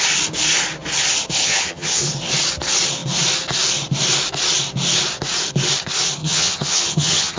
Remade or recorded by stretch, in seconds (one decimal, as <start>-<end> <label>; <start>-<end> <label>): 0.0-1.4 recorded; 1.4-2.0 remade; 2.0-6.2 recorded; 6.2-7.4 remade